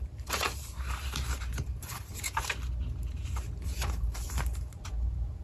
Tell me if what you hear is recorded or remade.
remade